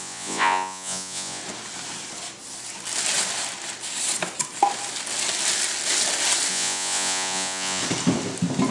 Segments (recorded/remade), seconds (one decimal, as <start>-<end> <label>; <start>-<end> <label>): 0.0-1.4 remade; 1.4-6.5 recorded; 6.5-7.8 remade; 7.8-8.7 recorded